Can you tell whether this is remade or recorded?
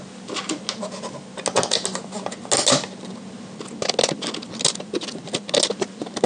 recorded